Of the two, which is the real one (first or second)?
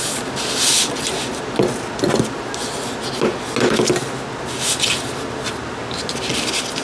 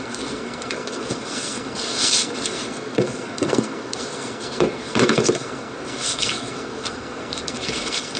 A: first